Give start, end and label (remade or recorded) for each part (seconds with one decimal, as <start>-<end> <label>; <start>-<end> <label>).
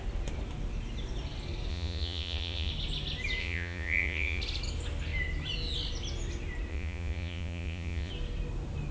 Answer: 0.0-1.7 recorded; 1.7-2.7 remade; 2.7-3.4 recorded; 3.4-4.4 remade; 4.4-6.7 recorded; 6.7-8.1 remade; 8.1-8.9 recorded